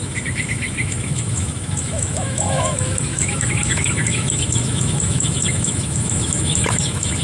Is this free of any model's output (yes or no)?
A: no